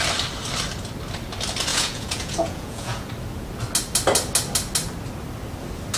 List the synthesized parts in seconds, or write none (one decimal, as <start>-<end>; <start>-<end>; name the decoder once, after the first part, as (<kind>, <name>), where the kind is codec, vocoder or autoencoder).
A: 1.7-3.1 (vocoder, Vocos)